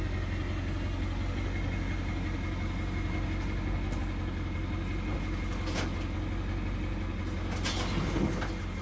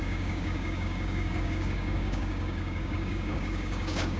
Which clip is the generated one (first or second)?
second